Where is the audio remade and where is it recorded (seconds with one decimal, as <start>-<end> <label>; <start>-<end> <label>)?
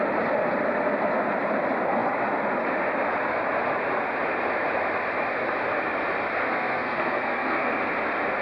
0.0-6.4 recorded; 6.4-7.7 remade; 7.7-8.4 recorded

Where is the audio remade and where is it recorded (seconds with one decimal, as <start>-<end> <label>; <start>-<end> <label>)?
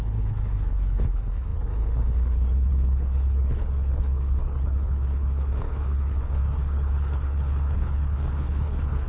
0.0-9.1 remade